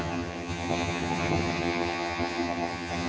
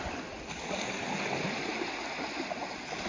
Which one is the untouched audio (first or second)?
second